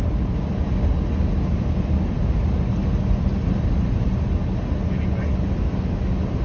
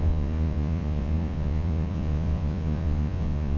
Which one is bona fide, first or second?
first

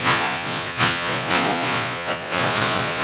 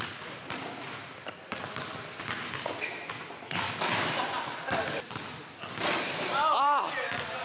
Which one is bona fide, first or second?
second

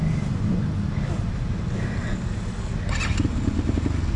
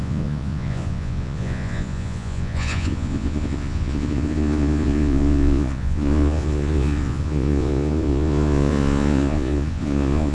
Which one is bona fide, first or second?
first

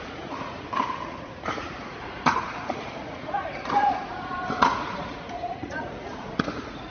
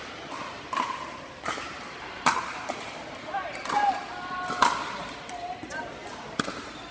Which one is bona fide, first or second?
second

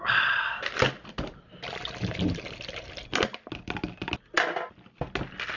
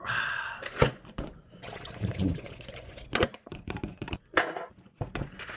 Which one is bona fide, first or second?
first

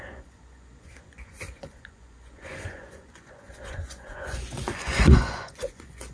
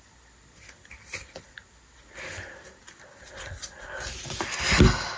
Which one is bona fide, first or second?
second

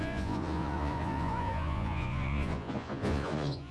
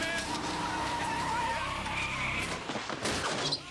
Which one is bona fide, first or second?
second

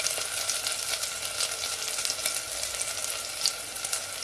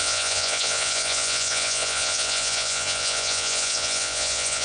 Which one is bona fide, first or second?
first